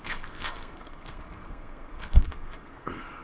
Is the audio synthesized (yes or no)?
yes